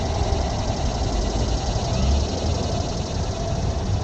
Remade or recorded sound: recorded